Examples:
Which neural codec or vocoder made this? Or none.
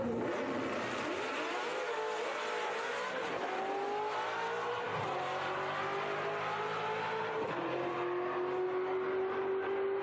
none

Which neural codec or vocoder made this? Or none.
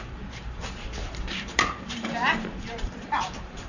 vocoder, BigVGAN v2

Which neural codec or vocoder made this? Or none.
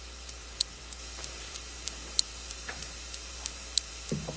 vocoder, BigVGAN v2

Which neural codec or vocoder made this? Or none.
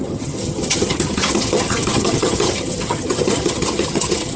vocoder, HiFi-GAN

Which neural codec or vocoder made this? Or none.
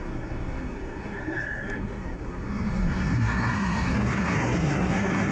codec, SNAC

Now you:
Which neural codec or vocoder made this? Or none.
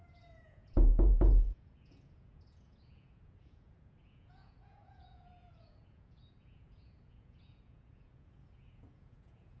vocoder, Vocos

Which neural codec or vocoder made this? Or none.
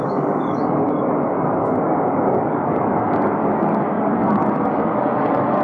codec, DAC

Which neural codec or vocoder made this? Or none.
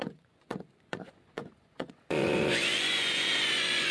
vocoder, Vocos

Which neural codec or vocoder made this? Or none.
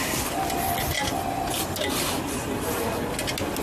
none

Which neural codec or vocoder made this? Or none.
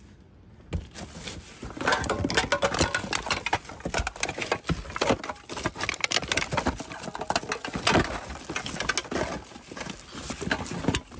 none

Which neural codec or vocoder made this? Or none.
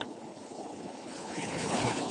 codec, HILCodec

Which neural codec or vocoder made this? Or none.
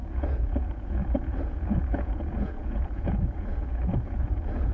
vocoder, Vocos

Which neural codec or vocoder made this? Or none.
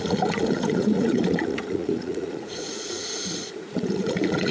vocoder, Vocos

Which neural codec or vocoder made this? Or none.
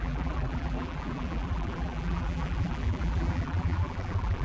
vocoder, BigVGAN v2